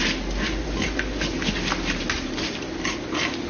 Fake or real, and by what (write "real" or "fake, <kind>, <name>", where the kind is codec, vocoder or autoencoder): real